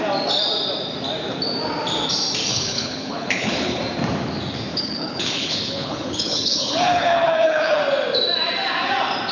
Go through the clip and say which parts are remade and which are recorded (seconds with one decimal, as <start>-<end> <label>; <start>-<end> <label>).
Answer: 0.0-2.5 recorded; 2.5-3.8 remade; 3.8-4.7 recorded; 4.7-7.8 remade; 7.8-9.3 recorded